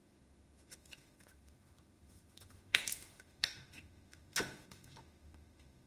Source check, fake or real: fake